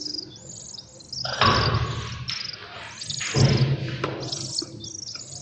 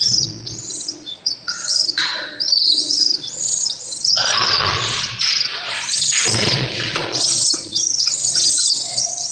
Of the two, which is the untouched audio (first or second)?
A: first